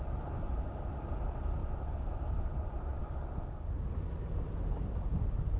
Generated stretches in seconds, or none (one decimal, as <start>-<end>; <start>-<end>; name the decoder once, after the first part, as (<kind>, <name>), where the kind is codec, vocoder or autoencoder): none